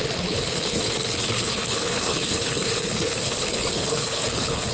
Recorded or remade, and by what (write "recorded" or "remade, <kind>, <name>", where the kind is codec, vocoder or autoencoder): remade, codec, HILCodec